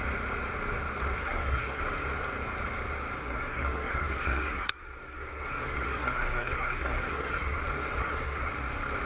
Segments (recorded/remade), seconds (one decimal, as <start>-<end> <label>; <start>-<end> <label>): 0.0-1.2 recorded; 1.2-1.8 remade; 1.8-3.2 recorded; 3.2-7.6 remade; 7.6-8.0 recorded; 8.0-8.5 remade; 8.5-9.1 recorded